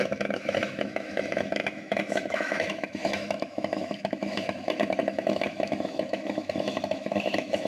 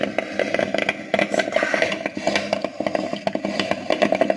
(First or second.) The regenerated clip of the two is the first